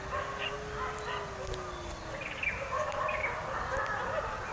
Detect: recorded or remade recorded